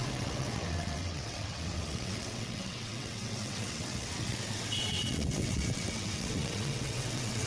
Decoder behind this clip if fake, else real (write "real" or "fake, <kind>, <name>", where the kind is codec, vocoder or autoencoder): fake, vocoder, WaveNeXt